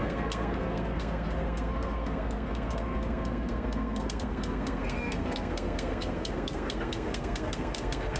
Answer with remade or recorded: remade